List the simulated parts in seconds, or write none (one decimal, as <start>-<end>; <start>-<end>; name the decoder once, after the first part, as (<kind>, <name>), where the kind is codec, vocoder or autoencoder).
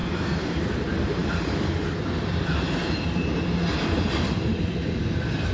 none